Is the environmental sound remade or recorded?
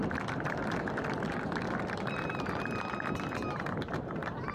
recorded